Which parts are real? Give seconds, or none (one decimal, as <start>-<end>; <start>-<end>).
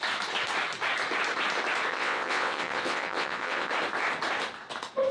0.0-1.9; 3.7-5.1